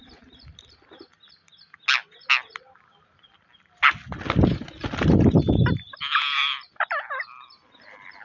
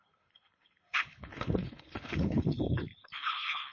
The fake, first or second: second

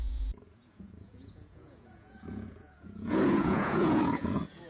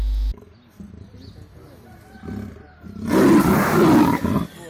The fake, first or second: first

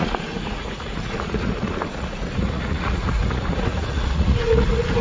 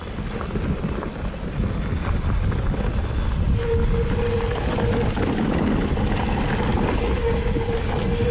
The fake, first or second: first